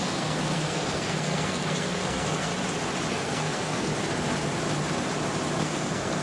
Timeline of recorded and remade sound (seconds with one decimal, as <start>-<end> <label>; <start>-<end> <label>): 0.0-2.5 remade; 2.5-3.1 recorded; 3.1-3.9 remade; 3.9-5.6 recorded; 5.6-6.2 remade